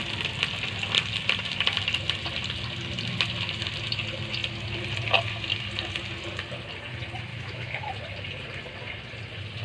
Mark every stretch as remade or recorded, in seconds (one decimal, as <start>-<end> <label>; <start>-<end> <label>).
0.0-7.3 recorded; 7.3-7.9 remade; 7.9-9.6 recorded